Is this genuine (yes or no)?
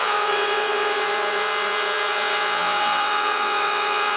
no